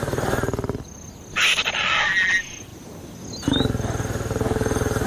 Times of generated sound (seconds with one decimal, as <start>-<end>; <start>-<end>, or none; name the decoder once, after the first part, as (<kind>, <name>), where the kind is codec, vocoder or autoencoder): none